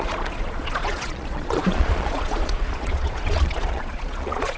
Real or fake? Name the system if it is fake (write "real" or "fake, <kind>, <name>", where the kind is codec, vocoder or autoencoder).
fake, vocoder, Vocos